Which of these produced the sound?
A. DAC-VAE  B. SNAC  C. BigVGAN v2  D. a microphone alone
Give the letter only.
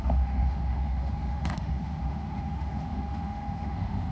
A